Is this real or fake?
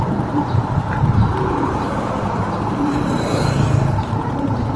fake